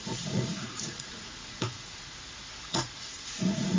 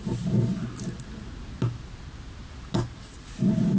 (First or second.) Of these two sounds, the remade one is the first